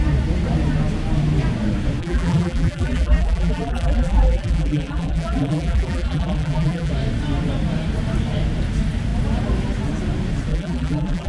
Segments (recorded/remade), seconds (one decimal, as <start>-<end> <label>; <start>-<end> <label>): 0.0-2.0 recorded; 2.0-6.9 remade; 6.9-10.5 recorded; 10.5-11.3 remade